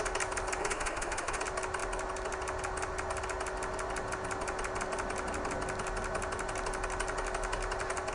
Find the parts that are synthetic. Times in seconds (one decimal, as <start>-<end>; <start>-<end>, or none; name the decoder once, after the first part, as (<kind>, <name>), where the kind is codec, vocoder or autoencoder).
0.6-1.4 (autoencoder, DAC-VAE)